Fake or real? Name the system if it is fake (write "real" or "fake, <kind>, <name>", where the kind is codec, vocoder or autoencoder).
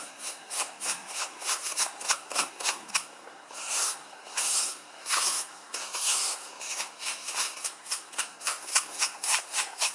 fake, codec, SNAC